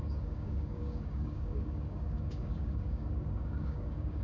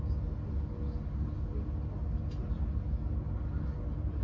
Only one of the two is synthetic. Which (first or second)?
first